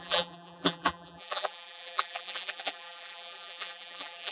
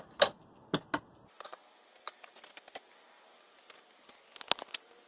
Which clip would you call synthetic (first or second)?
first